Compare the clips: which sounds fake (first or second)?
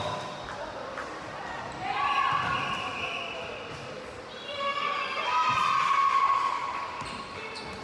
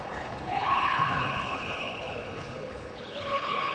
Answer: second